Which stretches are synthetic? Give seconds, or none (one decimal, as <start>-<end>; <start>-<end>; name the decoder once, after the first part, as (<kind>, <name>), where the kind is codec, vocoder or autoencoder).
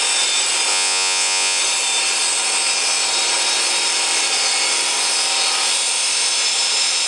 0.7-1.6 (vocoder, Vocos)